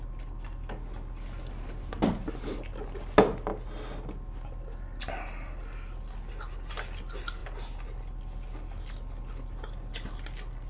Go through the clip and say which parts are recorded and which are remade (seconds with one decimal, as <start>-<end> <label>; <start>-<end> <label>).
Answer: 0.0-10.7 recorded